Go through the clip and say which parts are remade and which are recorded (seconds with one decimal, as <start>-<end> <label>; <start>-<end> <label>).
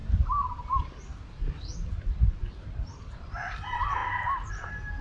0.0-3.0 recorded; 3.0-5.0 remade